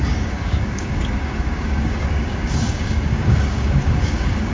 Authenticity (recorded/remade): remade